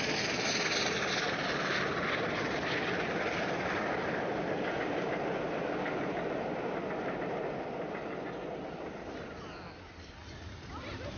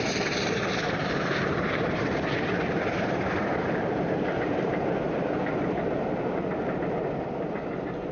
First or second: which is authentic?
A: first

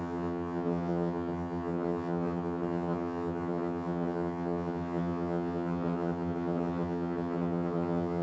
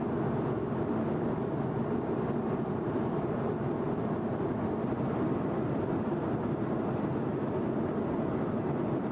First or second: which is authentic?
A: second